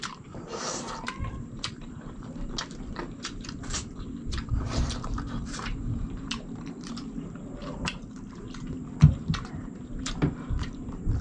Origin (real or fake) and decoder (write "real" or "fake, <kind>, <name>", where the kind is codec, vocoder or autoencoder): fake, vocoder, BigVGAN v2